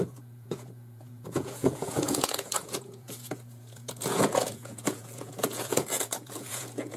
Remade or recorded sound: remade